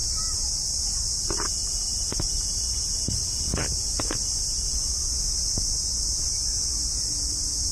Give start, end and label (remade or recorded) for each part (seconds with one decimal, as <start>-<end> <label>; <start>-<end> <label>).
0.0-7.7 recorded